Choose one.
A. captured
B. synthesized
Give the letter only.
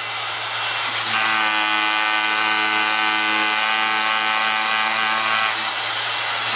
A